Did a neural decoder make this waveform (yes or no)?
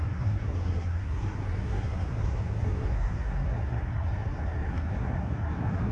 yes